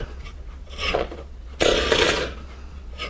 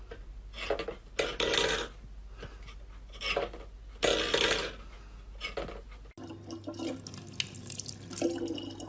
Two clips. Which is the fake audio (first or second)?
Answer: first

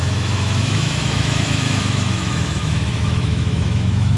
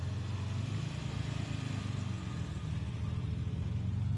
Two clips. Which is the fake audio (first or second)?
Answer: first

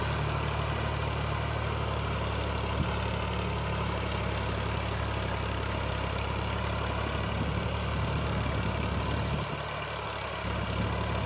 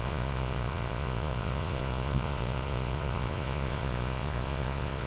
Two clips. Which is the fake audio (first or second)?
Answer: second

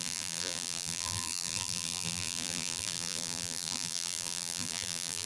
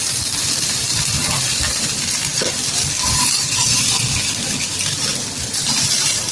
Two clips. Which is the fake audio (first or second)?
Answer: first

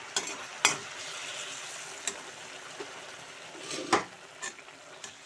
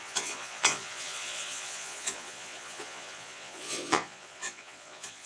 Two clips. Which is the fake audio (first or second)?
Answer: second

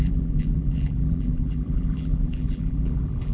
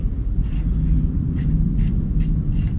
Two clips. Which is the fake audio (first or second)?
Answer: first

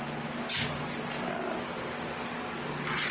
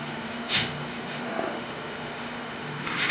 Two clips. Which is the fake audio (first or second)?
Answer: second